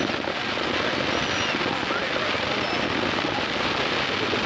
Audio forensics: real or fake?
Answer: real